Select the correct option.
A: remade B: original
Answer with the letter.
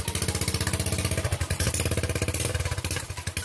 B